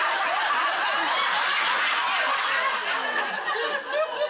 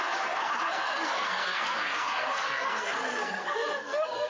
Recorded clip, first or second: first